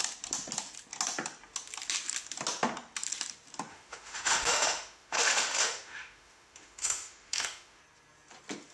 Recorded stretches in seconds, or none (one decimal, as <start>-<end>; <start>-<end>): 0.0-3.7; 7.8-8.7